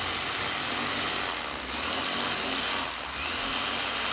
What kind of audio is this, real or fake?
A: real